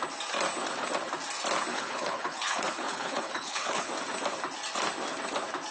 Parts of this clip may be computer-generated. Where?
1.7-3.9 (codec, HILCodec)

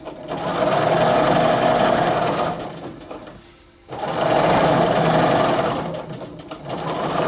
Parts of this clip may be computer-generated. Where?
none

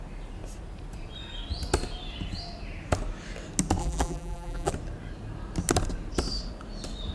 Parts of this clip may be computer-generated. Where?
3.8-4.7 (vocoder, BigVGAN v2)

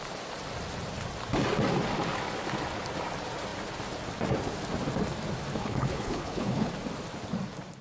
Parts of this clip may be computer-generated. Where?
5.6-6.7 (codec, HILCodec)

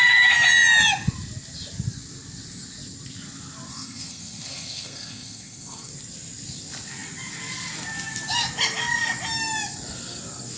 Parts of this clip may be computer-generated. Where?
3.7-5.9 (codec, SNAC)

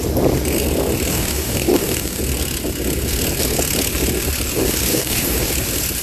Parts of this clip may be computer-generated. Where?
1.1-2.2 (codec, DAC); 4.9-5.5

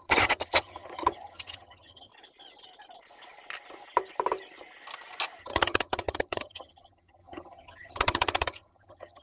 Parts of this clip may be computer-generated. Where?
0.0-2.1 (vocoder, HiFi-GAN); 5.4-9.2

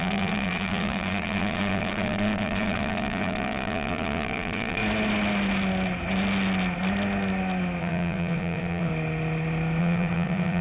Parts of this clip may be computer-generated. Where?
0.0-4.8 (vocoder, Vocos); 7.8-8.9; 9.8-10.6